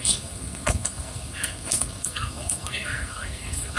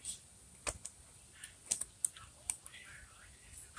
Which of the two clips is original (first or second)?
second